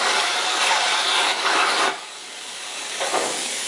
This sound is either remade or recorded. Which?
remade